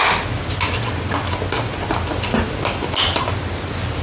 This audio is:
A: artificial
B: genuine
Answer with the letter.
B